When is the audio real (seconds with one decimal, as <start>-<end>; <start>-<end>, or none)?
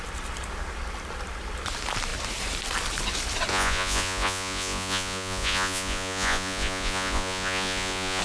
0.0-3.5